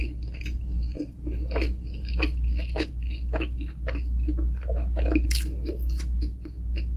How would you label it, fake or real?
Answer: fake